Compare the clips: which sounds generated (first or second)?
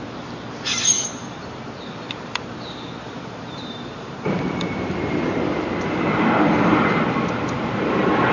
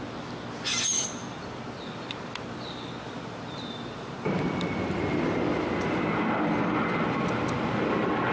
first